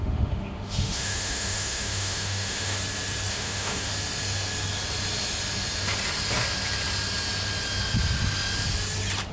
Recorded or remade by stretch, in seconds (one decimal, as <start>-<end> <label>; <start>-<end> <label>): 0.0-2.8 remade; 2.8-3.3 recorded; 3.3-3.9 remade; 3.9-9.3 recorded